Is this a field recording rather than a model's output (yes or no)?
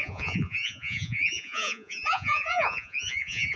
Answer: no